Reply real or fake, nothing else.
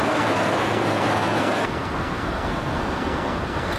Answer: fake